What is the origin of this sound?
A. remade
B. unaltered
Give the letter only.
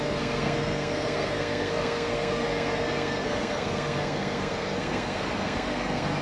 A